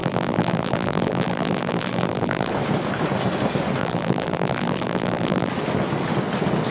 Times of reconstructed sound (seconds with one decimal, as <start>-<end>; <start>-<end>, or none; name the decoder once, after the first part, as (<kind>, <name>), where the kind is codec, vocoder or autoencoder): 0.0-2.5 (vocoder, BigVGAN v2); 3.8-5.5